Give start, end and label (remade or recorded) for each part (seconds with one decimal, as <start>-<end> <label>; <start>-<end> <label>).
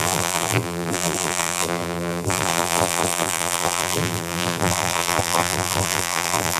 0.0-6.6 remade